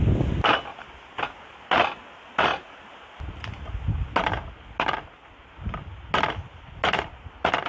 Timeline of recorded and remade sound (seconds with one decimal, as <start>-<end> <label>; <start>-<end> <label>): 0.0-7.7 recorded